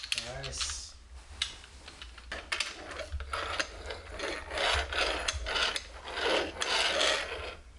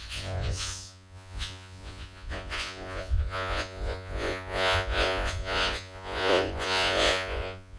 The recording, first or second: first